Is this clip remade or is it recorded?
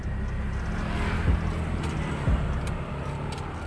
recorded